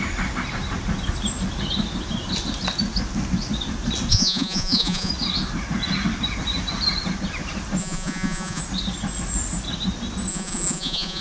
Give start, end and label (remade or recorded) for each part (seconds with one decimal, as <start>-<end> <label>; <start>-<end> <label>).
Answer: 0.0-4.1 recorded; 4.1-5.1 remade; 5.1-7.8 recorded; 7.8-8.6 remade; 8.6-10.3 recorded; 10.3-11.2 remade